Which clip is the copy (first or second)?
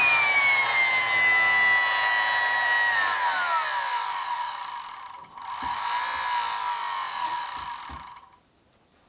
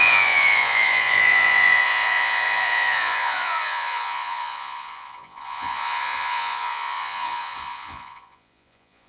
second